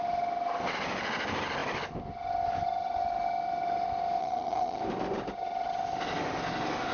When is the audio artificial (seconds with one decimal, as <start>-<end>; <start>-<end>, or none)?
4.2-4.8